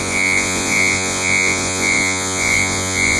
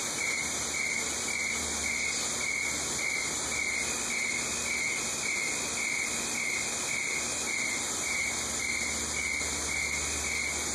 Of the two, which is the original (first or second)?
second